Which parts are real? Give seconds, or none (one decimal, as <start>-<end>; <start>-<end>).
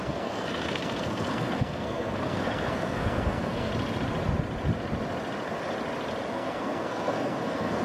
3.7-6.3